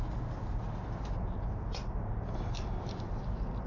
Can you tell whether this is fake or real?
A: real